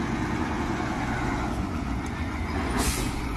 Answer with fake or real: fake